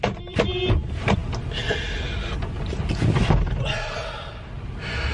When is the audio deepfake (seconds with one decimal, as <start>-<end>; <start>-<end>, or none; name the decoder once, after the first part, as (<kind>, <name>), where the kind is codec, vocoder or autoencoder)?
none